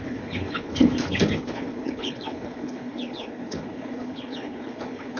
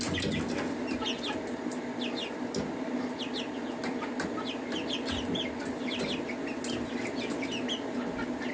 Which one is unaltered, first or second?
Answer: second